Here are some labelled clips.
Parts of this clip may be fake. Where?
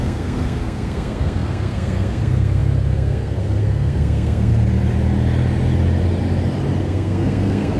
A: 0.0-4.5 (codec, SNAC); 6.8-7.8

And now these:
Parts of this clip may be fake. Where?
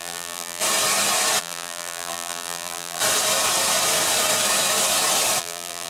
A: 0.0-0.6 (vocoder, BigVGAN v2); 1.4-3.0; 5.4-5.9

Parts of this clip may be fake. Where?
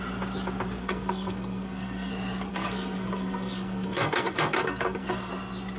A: 0.8-2.1 (codec, SNAC); 2.5-5.3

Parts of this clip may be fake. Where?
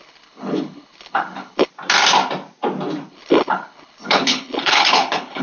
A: 0.0-1.7 (codec, HILCodec); 3.1-5.4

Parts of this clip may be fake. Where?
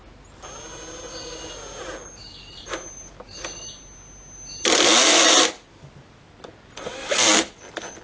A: none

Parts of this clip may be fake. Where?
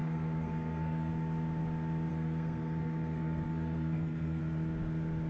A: 0.0-1.1 (codec, SNAC); 2.1-4.4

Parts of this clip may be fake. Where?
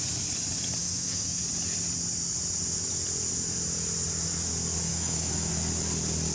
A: 0.8-1.4 (autoencoder, DAC-VAE); 4.9-5.5